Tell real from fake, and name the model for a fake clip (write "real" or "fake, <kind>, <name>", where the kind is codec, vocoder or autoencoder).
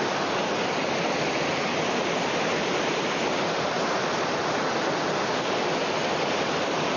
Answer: real